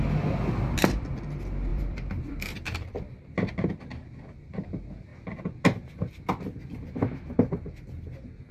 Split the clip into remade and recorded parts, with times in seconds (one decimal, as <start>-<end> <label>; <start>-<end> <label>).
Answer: 0.0-1.7 recorded; 1.7-3.7 remade; 3.7-8.5 recorded